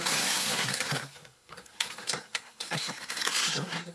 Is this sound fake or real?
fake